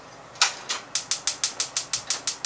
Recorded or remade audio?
recorded